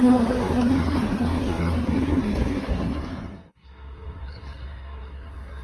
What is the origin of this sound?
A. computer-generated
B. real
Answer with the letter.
A